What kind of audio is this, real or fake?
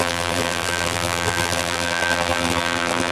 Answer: fake